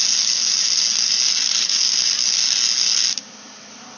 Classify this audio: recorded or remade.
recorded